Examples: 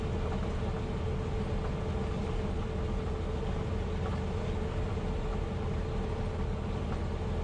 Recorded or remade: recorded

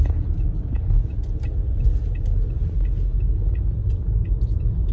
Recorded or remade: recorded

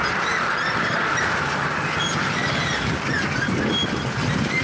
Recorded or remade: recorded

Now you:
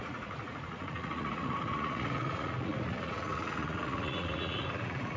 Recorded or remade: remade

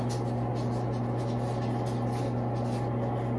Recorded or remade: recorded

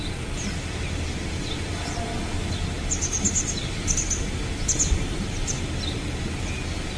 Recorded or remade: recorded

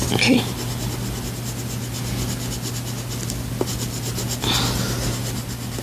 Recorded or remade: recorded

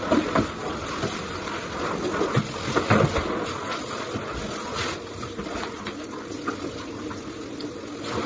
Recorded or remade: recorded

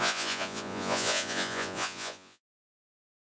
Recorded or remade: remade